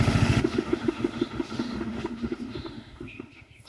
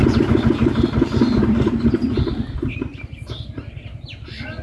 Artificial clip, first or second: first